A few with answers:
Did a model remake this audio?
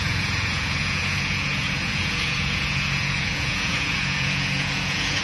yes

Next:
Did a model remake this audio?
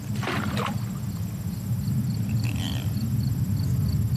no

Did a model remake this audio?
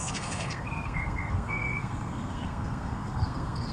yes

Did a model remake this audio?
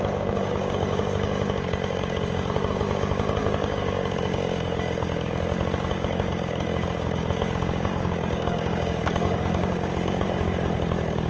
yes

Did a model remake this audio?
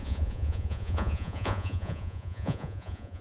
yes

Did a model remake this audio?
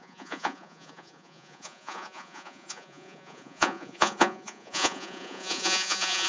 yes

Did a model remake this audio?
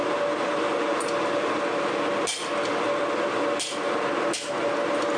no